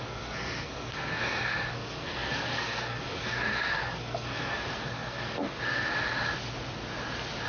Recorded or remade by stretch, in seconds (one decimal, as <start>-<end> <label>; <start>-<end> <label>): 0.0-5.9 remade; 5.9-7.5 recorded